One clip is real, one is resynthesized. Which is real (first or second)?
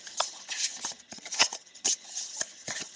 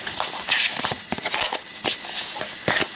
second